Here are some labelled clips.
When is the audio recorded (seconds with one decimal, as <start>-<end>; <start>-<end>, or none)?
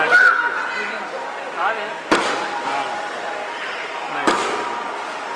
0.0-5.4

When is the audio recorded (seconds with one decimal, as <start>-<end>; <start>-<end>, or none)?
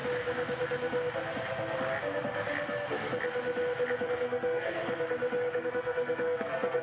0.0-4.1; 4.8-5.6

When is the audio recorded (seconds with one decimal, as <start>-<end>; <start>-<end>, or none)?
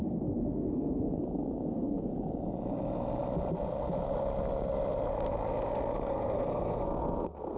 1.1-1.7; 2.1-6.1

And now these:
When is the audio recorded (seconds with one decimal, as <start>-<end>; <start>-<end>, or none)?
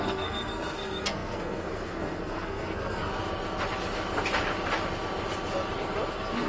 3.1-6.1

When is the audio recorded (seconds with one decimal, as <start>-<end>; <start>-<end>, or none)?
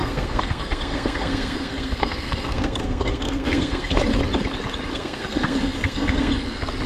4.0-4.9; 6.3-6.9